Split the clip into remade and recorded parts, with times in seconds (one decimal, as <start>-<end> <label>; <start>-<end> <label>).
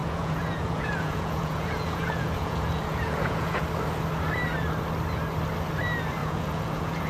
0.0-3.6 remade; 3.6-6.2 recorded; 6.2-7.1 remade